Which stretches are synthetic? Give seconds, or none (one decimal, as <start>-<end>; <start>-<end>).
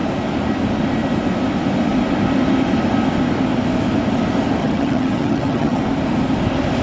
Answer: 4.6-5.8